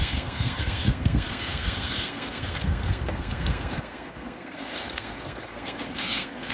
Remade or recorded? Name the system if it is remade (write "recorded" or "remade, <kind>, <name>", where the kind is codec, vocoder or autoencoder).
remade, codec, SNAC